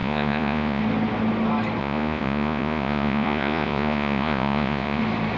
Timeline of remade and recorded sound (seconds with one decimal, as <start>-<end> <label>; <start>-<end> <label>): 0.0-0.8 remade; 0.8-1.8 recorded; 1.8-5.0 remade; 5.0-5.4 recorded